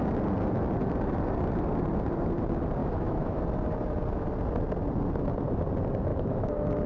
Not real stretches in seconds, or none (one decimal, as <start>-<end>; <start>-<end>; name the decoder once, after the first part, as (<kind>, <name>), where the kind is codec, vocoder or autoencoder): 2.8-3.4 (autoencoder, DAC-VAE); 6.1-6.9